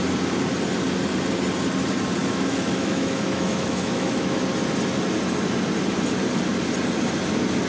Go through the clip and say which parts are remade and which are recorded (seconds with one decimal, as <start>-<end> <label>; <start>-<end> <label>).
0.0-2.2 recorded; 2.2-4.4 remade; 4.4-7.7 recorded

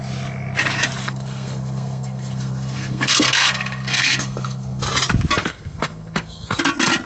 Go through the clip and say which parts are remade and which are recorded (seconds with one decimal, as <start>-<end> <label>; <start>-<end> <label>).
0.0-1.0 recorded; 1.0-4.8 remade; 4.8-5.4 recorded; 5.4-6.6 remade; 6.6-7.1 recorded

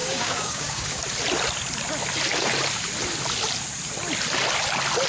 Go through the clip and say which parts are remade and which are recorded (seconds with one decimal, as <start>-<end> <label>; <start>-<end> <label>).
0.0-1.0 remade; 1.0-5.1 recorded

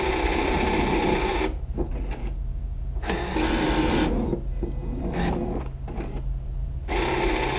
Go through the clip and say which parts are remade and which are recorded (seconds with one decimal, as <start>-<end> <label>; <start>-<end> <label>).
0.0-2.2 recorded; 2.2-3.3 remade; 3.3-7.6 recorded